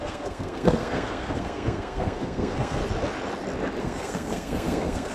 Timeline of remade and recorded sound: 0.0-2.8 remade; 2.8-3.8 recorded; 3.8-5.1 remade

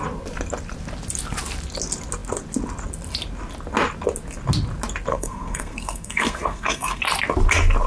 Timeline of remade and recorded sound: 0.0-5.1 recorded; 5.1-7.0 remade; 7.0-7.9 recorded

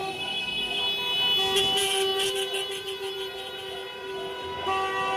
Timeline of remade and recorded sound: 0.0-0.8 remade; 0.8-5.2 recorded

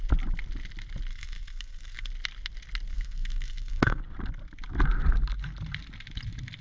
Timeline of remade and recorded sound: 0.0-1.1 recorded; 1.1-2.1 remade; 2.1-2.9 recorded; 2.9-4.0 remade; 4.0-6.6 recorded

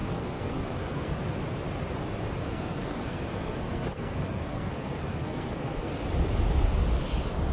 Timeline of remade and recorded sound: 0.0-1.1 remade; 1.1-2.4 recorded; 2.4-5.9 remade; 5.9-7.5 recorded

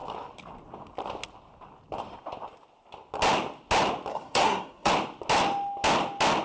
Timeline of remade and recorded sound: 0.0-4.1 recorded; 4.1-4.9 remade; 4.9-6.4 recorded